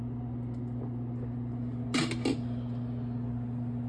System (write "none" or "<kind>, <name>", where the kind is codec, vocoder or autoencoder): none